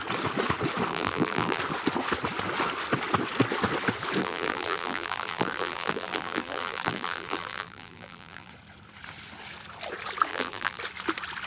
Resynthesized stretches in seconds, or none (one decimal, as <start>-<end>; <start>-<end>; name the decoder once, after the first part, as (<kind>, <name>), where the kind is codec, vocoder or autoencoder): 0.9-1.6 (vocoder, BigVGAN v2); 4.2-8.5; 10.3-10.8